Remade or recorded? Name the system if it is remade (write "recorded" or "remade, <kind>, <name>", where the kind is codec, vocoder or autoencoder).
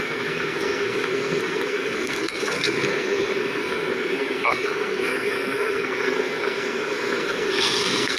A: remade, codec, SNAC